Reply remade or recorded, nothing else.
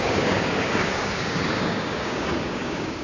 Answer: remade